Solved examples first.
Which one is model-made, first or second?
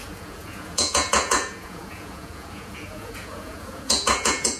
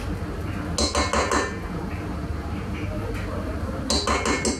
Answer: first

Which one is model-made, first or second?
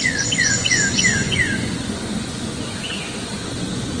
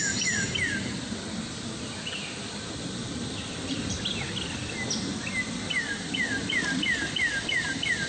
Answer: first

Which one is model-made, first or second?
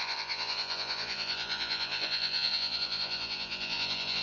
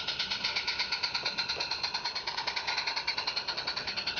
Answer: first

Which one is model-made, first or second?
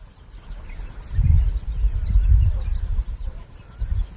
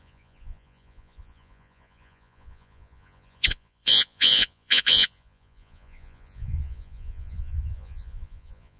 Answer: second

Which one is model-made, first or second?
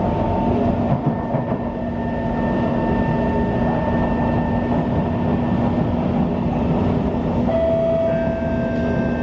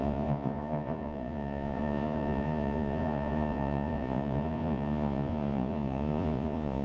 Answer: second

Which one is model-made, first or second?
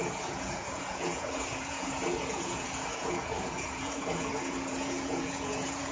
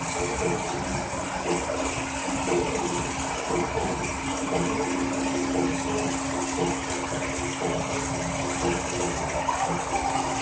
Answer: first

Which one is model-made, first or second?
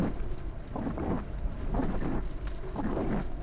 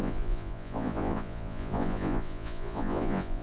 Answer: second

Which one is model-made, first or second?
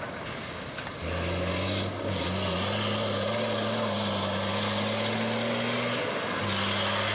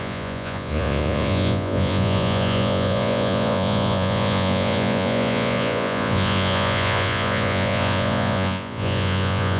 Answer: second